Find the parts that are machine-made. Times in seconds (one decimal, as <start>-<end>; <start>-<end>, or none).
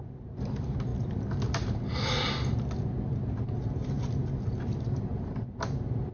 none